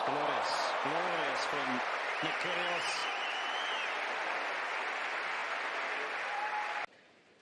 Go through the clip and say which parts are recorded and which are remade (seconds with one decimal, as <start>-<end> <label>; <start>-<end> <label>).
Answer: 0.0-7.4 recorded